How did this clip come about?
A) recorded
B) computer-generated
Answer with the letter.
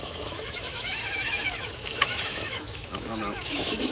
B